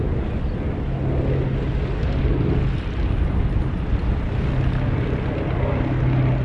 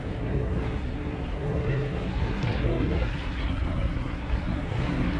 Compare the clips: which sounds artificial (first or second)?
second